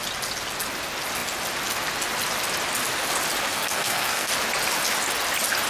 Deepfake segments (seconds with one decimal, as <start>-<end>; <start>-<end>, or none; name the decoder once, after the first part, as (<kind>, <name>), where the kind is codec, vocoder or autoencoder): 3.5-4.3 (codec, SNAC)